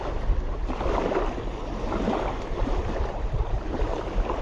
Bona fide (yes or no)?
yes